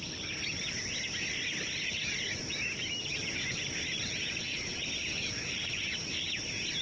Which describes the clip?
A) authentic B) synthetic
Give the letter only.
A